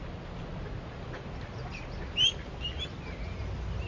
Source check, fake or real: real